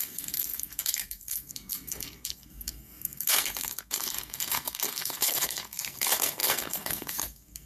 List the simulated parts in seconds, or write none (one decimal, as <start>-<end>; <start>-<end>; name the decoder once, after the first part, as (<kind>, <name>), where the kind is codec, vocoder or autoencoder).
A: 0.0-7.7 (codec, SNAC)